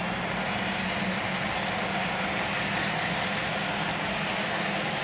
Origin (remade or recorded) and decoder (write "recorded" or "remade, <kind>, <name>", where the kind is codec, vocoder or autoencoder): recorded